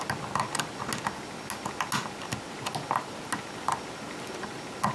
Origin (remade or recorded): recorded